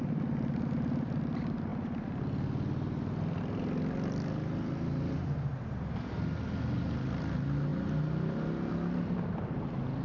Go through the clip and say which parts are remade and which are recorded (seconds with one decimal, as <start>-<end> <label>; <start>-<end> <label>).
0.0-10.0 recorded